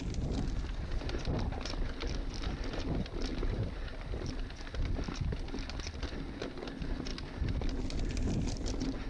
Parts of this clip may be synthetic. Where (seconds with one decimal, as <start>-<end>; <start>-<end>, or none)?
none